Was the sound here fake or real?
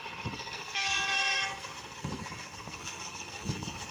fake